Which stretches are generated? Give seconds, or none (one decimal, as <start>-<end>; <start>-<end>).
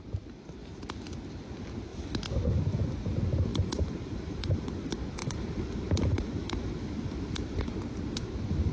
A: 3.5-4.7; 5.2-7.6